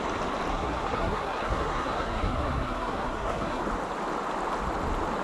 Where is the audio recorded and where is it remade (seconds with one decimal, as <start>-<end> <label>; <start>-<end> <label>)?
0.0-0.5 recorded; 0.5-3.6 remade; 3.6-5.2 recorded